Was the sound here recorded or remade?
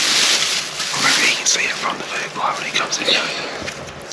recorded